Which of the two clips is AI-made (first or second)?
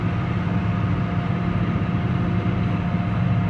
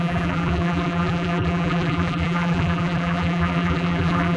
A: second